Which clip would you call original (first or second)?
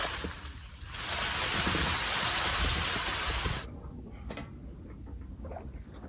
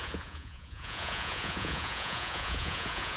first